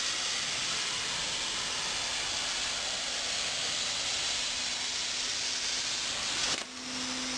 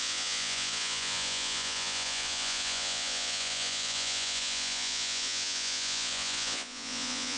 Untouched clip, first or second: first